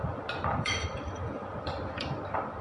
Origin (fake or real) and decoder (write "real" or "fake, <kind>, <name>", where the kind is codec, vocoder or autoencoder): fake, vocoder, BigVGAN v2